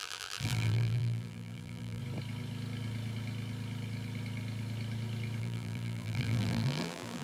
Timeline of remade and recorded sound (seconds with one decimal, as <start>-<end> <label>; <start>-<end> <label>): 0.0-2.0 remade; 2.0-5.4 recorded; 5.4-7.2 remade